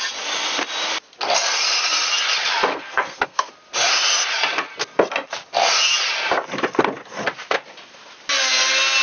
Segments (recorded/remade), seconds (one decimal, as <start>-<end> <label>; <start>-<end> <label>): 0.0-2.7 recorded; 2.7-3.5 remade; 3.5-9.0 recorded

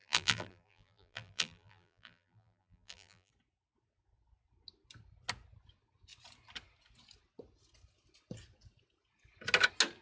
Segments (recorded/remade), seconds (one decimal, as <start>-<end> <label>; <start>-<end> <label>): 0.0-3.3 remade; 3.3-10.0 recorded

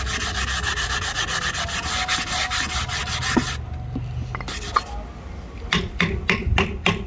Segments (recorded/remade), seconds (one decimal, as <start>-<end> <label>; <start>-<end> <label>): 0.0-0.7 recorded; 0.7-1.4 remade; 1.4-7.1 recorded

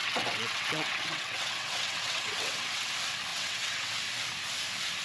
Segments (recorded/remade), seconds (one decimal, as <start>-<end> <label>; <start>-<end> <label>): 0.0-2.9 remade; 2.9-3.3 recorded; 3.3-4.0 remade; 4.0-5.0 recorded

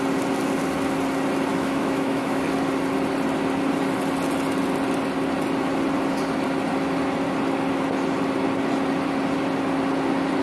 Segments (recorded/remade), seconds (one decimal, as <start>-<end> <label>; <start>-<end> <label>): 0.0-1.5 recorded; 1.5-2.4 remade; 2.4-10.4 recorded